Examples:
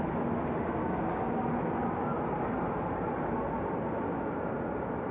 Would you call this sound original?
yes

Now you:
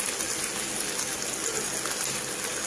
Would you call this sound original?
yes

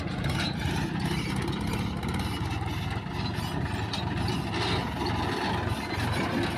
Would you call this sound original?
yes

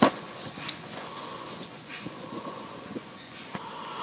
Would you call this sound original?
no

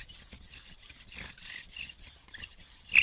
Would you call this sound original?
yes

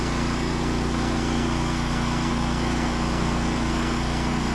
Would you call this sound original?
no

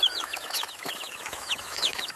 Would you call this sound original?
no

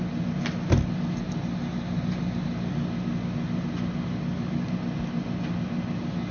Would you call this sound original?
yes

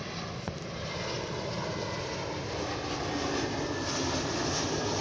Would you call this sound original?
yes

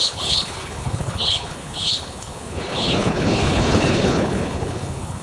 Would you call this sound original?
no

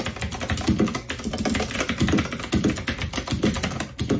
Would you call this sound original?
yes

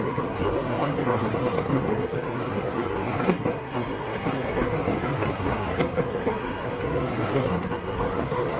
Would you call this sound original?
no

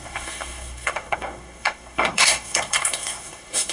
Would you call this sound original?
no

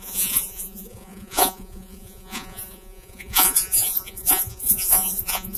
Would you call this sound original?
no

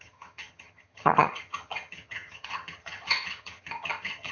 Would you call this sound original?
no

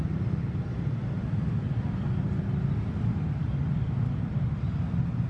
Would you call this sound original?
yes